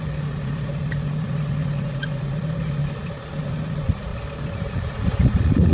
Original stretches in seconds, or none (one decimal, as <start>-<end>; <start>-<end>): 2.8-3.4; 4.1-4.7